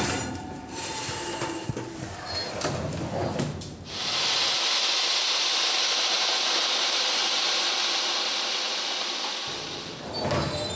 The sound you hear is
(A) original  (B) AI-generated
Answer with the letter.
A